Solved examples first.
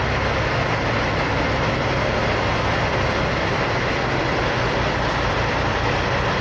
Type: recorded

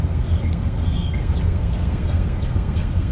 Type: remade